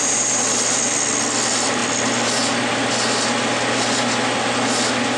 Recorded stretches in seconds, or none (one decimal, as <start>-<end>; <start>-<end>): 0.0-5.2